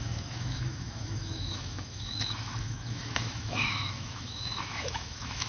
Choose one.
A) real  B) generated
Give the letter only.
B